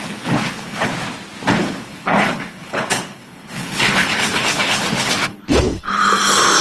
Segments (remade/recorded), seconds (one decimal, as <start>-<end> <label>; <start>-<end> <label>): 0.0-0.9 remade; 0.9-1.5 recorded; 1.5-6.0 remade; 6.0-6.6 recorded